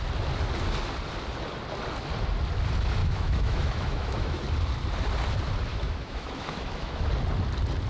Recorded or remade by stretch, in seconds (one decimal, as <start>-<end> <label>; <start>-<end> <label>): 0.0-3.0 recorded; 3.0-4.4 remade; 4.4-5.7 recorded; 5.7-7.1 remade; 7.1-7.9 recorded